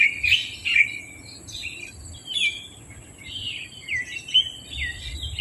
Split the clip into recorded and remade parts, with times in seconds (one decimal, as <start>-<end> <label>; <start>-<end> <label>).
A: 0.0-2.2 recorded; 2.2-4.2 remade; 4.2-5.4 recorded